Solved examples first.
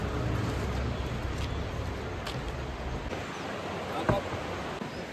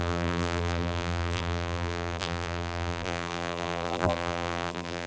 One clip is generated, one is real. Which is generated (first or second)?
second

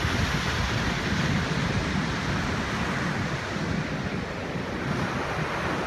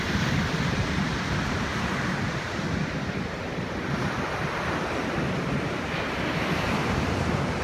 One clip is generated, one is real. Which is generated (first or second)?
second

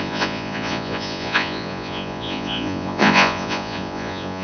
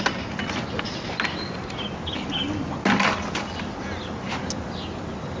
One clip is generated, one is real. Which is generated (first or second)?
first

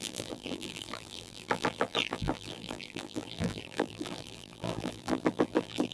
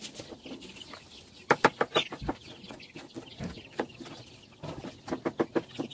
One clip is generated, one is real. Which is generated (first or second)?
first